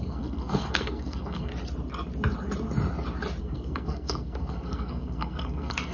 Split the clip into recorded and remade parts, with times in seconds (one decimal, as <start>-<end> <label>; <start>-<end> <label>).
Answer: 0.0-1.5 remade; 1.5-3.4 recorded; 3.4-5.9 remade